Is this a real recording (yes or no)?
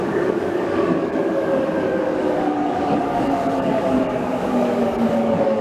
no